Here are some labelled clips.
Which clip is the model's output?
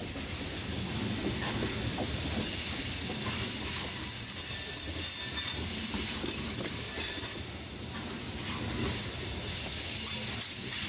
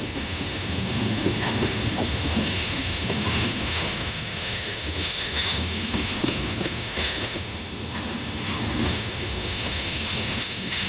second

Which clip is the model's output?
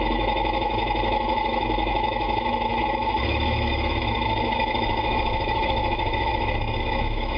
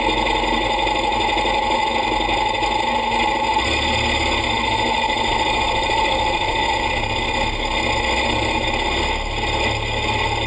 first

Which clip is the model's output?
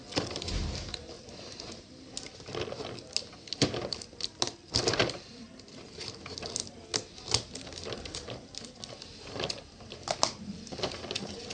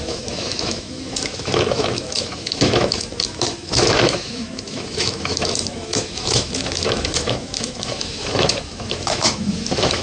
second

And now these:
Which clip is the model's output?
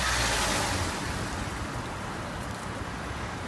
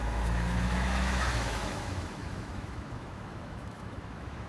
second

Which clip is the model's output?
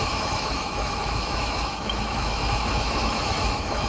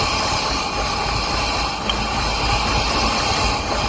first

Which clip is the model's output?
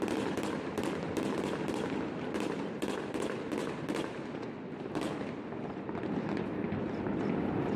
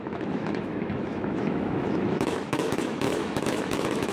second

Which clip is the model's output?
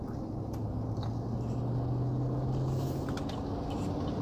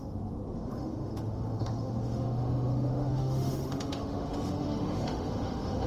second